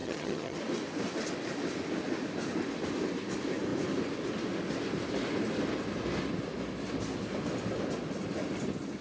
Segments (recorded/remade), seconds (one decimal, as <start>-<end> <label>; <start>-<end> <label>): 0.0-0.6 remade; 0.6-9.0 recorded